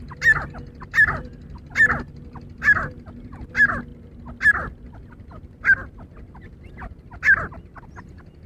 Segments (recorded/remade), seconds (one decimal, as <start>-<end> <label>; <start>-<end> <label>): 0.0-8.5 recorded